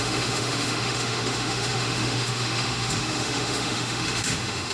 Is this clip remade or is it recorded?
remade